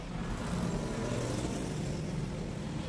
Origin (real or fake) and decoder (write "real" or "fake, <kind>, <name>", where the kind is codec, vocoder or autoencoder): real